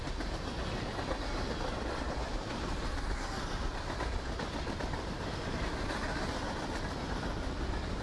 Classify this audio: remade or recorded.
recorded